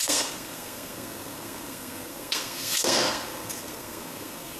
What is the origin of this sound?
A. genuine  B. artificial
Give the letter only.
B